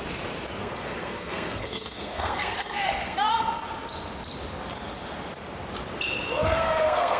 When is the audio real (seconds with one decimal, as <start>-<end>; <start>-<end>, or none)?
0.0-0.6; 3.4-6.3